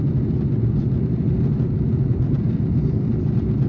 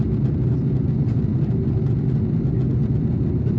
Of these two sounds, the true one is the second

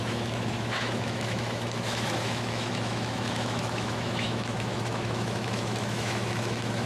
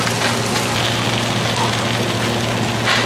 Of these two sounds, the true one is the second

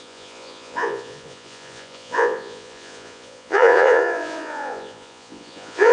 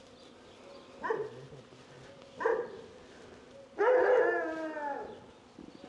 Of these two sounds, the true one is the second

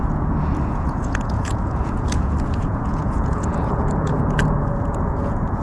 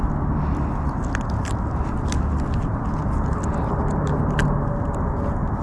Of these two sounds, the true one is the second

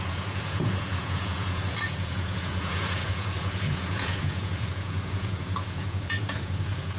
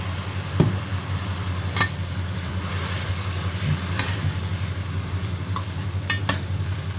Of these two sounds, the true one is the second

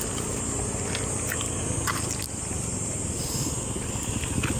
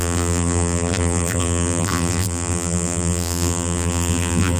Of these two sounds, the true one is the first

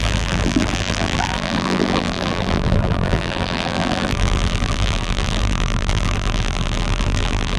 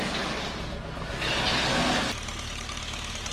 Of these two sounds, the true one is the second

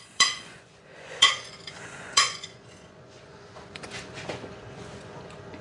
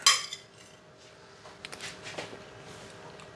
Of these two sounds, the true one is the second